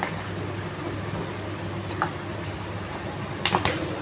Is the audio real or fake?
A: real